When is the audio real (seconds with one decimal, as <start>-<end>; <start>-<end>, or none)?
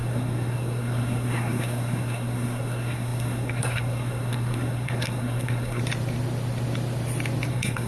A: 5.8-7.5